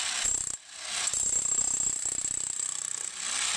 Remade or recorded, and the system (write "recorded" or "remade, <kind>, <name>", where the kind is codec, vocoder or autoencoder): recorded